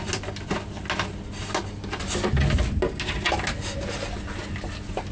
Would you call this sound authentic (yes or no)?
yes